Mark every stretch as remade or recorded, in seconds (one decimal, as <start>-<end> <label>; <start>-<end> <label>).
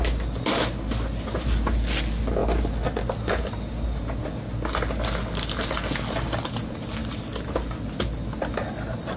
0.0-9.2 recorded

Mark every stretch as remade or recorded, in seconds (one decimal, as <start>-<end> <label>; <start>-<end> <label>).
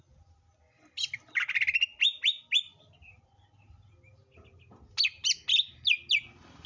0.0-6.7 recorded